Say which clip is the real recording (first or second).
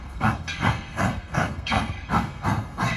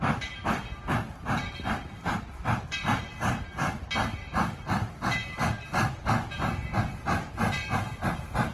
second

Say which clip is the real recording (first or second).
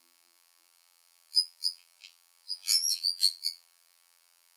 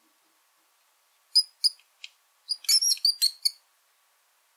second